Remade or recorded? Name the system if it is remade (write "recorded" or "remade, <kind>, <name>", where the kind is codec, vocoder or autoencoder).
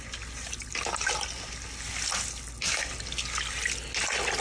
recorded